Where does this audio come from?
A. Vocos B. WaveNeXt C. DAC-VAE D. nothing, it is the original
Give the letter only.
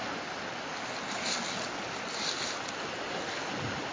D